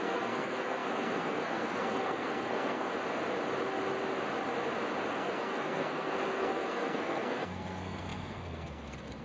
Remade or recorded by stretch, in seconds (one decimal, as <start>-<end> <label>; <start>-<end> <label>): 0.0-2.9 remade; 2.9-5.1 recorded; 5.1-9.2 remade